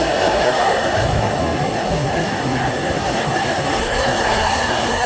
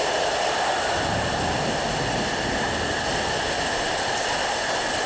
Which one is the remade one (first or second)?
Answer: first